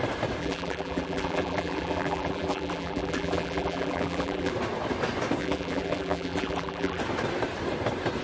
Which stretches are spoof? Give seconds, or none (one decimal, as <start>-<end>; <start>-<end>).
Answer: 0.4-4.5; 5.4-7.0